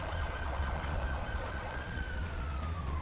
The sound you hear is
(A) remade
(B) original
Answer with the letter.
A